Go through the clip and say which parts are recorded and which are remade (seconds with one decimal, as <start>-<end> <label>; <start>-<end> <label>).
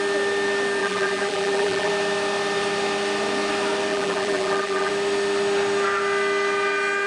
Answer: 0.0-0.8 recorded; 0.8-1.9 remade; 1.9-3.9 recorded; 3.9-4.9 remade; 4.9-7.1 recorded